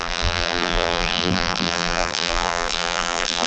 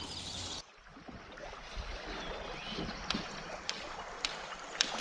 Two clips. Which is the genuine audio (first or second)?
second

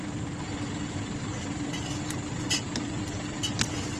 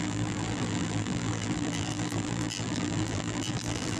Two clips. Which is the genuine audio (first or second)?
first